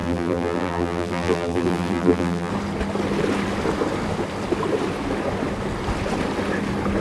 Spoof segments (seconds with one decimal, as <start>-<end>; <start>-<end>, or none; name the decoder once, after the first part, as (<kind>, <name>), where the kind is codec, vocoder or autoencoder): 0.0-2.5 (vocoder, BigVGAN v2)